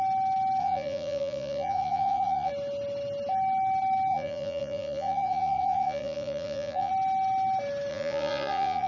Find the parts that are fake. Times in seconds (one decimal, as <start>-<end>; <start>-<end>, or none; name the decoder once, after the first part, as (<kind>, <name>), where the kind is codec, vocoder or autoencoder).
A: 0.6-2.5 (vocoder, Vocos); 4.1-6.9; 7.9-8.9